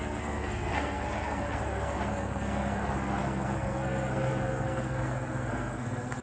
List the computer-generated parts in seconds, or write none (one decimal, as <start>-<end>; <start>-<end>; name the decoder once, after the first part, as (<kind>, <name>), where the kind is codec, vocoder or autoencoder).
0.0-6.2 (codec, SNAC)